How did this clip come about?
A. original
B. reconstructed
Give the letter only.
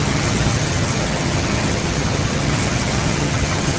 B